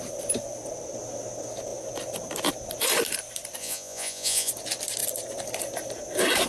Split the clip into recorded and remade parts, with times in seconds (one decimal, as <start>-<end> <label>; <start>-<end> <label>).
0.0-3.6 recorded; 3.6-4.5 remade; 4.5-6.5 recorded